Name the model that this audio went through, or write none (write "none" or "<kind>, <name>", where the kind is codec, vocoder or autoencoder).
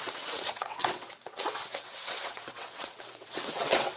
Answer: vocoder, WaveNeXt